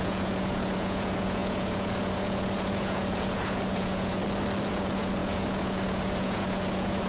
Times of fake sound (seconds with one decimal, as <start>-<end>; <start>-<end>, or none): 0.0-4.2; 4.7-7.1